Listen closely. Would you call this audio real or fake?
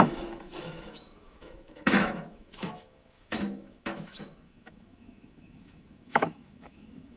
fake